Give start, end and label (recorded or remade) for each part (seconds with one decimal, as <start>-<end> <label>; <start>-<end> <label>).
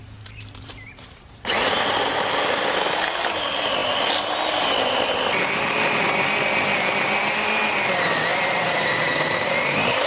0.0-1.9 remade; 1.9-8.3 recorded; 8.3-10.1 remade